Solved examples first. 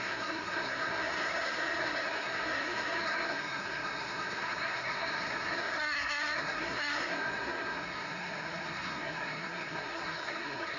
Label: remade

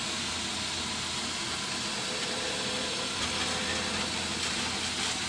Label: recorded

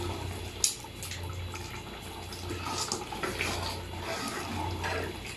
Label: recorded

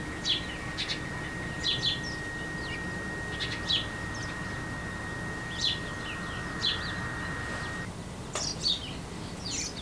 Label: recorded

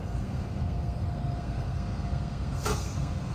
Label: remade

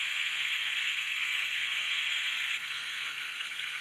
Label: remade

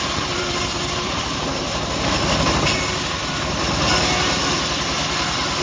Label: recorded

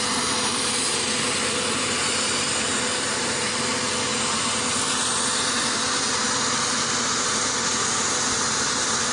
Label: recorded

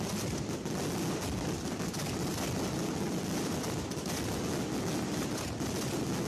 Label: recorded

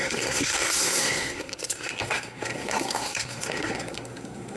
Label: remade